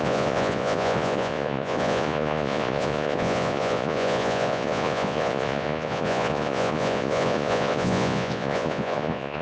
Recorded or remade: remade